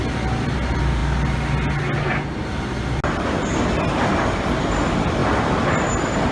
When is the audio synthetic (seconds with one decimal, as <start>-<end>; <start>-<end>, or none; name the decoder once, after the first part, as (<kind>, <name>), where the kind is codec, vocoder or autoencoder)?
none